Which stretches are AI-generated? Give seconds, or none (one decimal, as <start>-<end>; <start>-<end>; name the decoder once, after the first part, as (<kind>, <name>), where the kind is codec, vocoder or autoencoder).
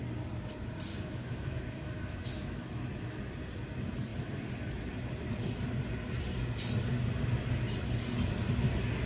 0.9-3.2 (autoencoder, DAC-VAE)